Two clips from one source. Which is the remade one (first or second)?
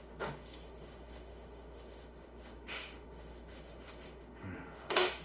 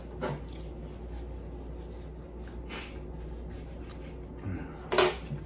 first